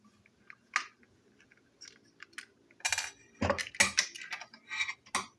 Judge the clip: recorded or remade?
recorded